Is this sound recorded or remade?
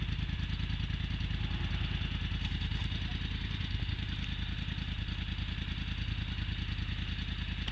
recorded